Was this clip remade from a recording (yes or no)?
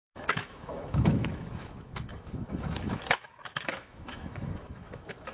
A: yes